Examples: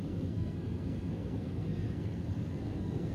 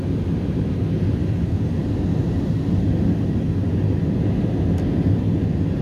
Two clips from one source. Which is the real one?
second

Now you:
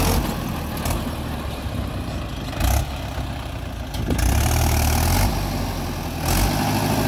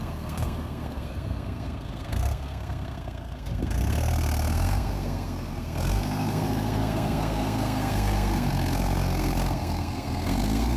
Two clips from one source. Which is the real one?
first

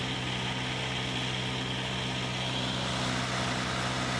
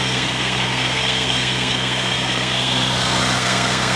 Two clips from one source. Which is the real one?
first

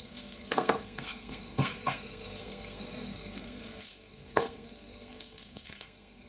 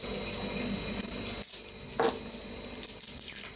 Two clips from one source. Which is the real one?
second